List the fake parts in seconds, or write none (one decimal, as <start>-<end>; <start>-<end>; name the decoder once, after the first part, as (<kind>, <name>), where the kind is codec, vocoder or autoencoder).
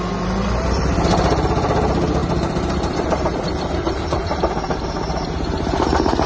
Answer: 2.2-6.3 (vocoder, BigVGAN v2)